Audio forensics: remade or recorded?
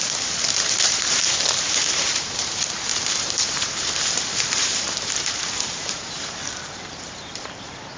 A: remade